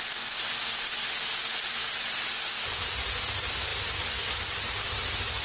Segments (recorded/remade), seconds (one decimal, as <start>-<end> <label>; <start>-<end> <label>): 0.0-5.4 recorded